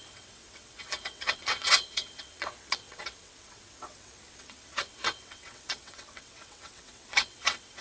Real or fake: fake